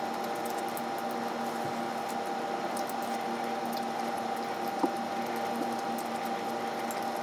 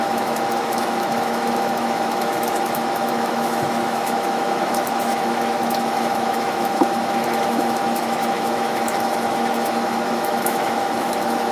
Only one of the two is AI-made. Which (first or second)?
second